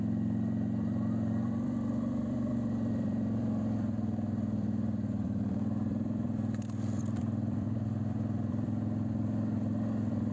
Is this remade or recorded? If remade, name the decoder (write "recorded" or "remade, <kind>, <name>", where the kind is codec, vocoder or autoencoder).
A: remade, vocoder, BigVGAN v2